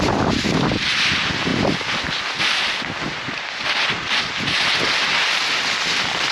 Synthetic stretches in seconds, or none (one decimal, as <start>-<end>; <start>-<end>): none